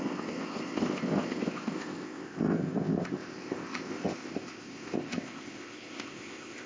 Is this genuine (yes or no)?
no